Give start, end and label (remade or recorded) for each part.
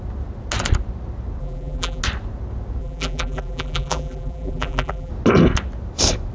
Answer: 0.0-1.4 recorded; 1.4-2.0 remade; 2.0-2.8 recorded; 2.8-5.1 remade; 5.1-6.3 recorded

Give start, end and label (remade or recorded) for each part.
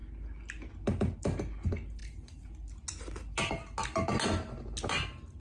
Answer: 0.0-5.4 recorded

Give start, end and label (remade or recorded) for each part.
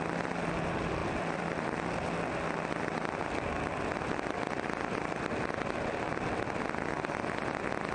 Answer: 0.0-1.0 recorded; 1.0-1.6 remade; 1.6-7.9 recorded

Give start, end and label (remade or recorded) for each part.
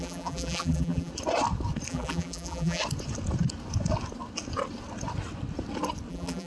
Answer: 0.0-1.1 remade; 1.1-1.9 recorded; 1.9-2.8 remade; 2.8-6.1 recorded; 6.1-6.5 remade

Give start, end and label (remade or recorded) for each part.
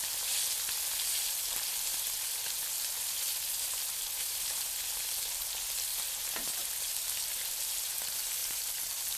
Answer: 0.0-1.9 recorded; 1.9-4.8 remade; 4.8-8.4 recorded; 8.4-9.2 remade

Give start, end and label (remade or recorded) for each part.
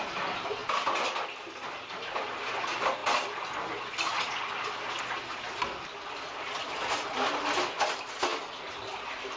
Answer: 0.0-0.6 recorded; 0.6-1.4 remade; 1.4-9.4 recorded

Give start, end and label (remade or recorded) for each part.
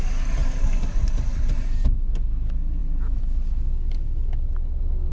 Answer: 0.0-0.4 recorded; 0.4-1.0 remade; 1.0-5.1 recorded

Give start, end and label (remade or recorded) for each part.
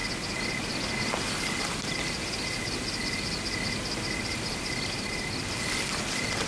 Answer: 0.0-6.5 recorded